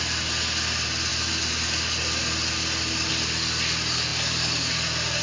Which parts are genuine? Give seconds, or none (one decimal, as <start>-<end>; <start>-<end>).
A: 0.0-5.2